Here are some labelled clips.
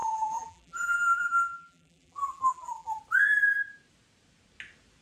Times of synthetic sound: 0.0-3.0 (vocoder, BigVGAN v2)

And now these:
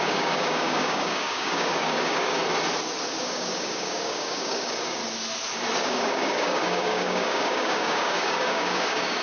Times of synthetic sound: 0.0-2.4 (codec, DAC); 3.2-5.0; 5.8-9.2

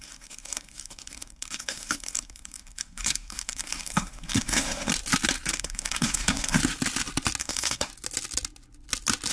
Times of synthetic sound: 0.0-4.9 (codec, SNAC); 5.5-6.6; 7.4-7.9

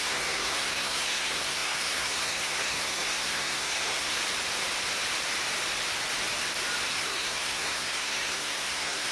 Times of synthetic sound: 0.0-4.2 (codec, SNAC); 6.9-9.1

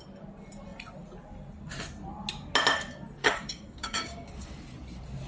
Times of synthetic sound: 3.2-4.6 (codec, DAC)

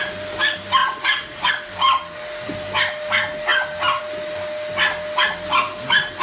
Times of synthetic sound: 0.8-1.5 (vocoder, Vocos)

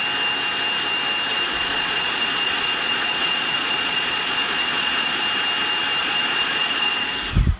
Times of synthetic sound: 1.3-5.2 (vocoder, Vocos); 6.0-7.1

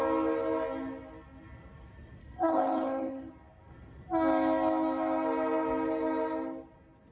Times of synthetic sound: 2.2-3.3 (codec, HILCodec)